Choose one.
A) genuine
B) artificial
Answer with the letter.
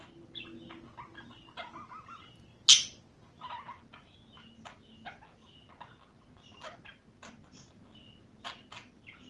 A